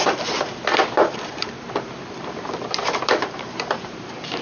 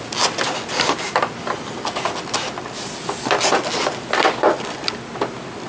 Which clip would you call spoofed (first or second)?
first